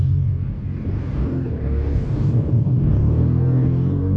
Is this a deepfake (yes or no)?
yes